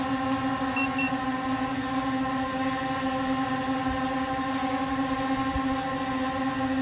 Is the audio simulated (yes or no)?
no